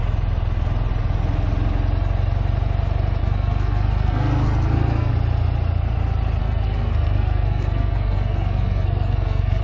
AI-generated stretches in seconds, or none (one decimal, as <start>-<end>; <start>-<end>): 3.2-5.1; 6.4-9.6